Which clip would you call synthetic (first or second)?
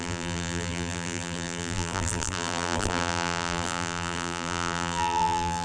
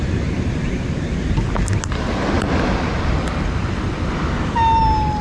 first